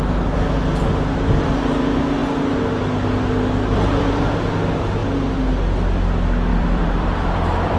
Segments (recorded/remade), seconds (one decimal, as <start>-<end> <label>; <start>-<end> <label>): 0.0-6.5 recorded; 6.5-7.8 remade